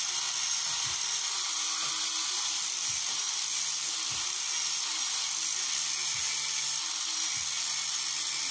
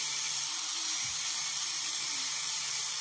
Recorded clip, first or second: first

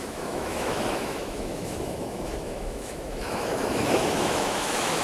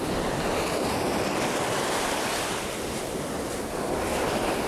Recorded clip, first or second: second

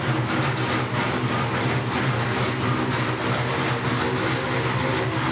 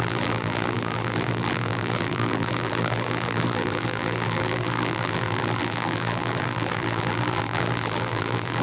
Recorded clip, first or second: first